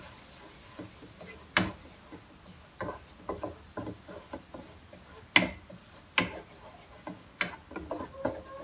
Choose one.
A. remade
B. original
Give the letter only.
B